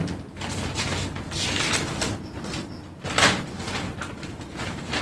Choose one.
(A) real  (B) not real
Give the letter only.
A